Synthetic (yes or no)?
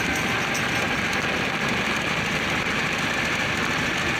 no